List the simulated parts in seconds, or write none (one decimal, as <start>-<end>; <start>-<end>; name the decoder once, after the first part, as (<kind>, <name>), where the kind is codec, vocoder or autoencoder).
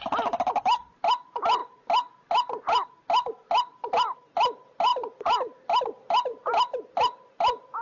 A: none